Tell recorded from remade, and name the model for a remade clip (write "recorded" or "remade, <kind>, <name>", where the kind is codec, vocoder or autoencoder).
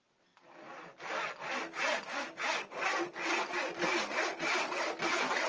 recorded